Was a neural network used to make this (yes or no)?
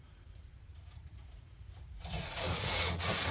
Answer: yes